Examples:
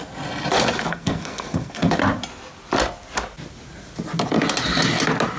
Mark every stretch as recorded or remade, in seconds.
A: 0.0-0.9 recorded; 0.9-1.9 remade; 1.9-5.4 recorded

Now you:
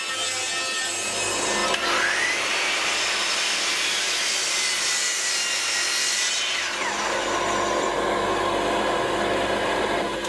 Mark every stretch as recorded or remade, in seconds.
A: 0.0-10.3 recorded

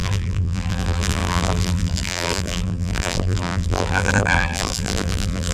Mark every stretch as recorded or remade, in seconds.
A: 0.0-5.5 remade